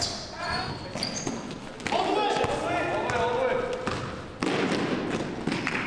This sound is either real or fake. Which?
real